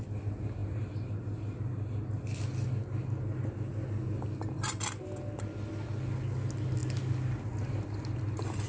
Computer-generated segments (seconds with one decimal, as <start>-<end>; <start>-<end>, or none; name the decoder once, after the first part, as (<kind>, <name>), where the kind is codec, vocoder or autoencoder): none